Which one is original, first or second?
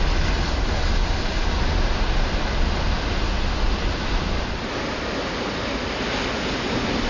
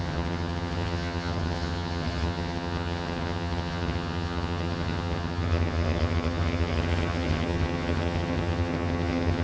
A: first